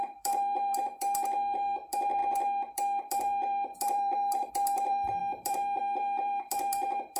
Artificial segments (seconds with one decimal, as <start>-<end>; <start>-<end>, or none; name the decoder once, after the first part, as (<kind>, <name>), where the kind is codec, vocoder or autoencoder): 0.0-7.2 (vocoder, BigVGAN v2)